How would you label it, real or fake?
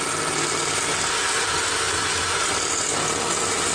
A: real